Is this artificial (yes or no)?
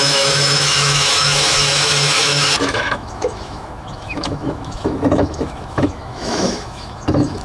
yes